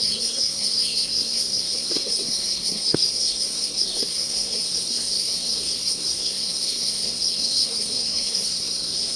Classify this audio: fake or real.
fake